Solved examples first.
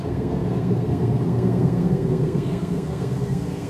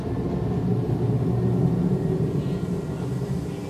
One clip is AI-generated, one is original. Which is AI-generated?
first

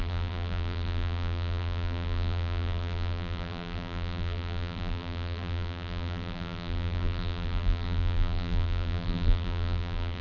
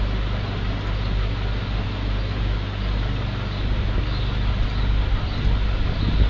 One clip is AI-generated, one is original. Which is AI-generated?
first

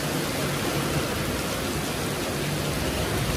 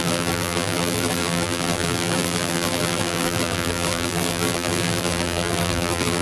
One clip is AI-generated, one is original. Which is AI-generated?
second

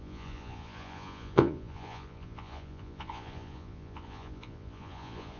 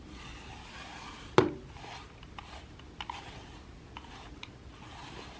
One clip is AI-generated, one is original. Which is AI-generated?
first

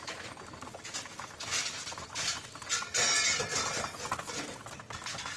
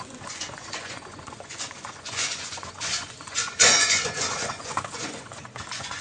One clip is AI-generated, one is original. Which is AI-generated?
second